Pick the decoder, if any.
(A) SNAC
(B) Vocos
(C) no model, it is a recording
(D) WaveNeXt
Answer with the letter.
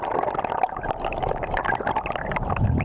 C